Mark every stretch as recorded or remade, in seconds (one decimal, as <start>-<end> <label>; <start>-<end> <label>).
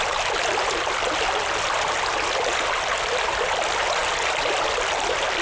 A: 0.0-5.4 recorded